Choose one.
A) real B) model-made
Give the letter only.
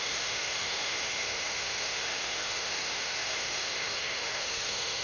B